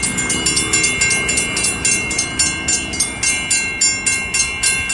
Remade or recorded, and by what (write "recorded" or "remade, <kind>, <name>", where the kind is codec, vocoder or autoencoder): recorded